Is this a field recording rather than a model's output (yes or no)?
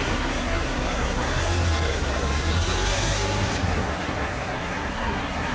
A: no